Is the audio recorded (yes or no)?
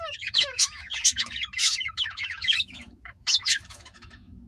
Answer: no